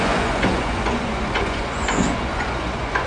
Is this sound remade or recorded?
remade